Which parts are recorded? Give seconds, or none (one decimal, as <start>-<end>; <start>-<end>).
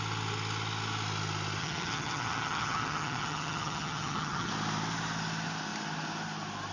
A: 0.0-1.6; 4.5-6.7